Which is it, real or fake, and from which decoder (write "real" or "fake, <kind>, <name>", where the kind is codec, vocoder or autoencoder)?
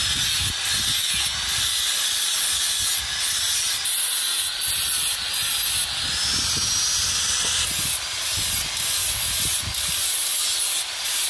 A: real